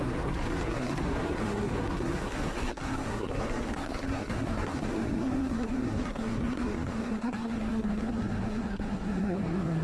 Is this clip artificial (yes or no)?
yes